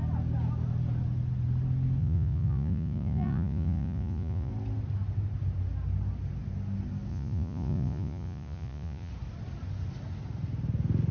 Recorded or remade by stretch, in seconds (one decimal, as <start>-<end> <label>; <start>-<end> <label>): 0.0-2.0 recorded; 2.0-4.5 remade; 4.5-7.1 recorded; 7.1-9.1 remade; 9.1-11.1 recorded